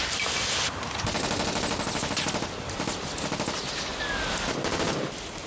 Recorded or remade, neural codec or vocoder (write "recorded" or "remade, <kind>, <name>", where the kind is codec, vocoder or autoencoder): recorded